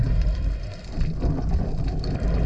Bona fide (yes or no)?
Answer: no